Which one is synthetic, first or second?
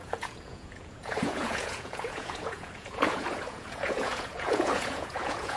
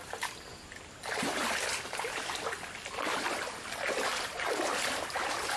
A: first